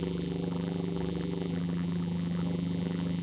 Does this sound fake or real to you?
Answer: fake